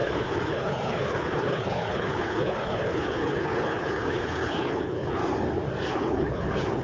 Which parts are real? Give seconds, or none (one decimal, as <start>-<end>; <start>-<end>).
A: 5.2-5.9